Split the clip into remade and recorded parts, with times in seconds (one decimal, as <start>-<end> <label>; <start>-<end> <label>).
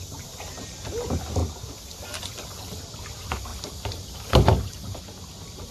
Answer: 0.0-1.4 remade; 1.4-2.0 recorded; 2.0-5.7 remade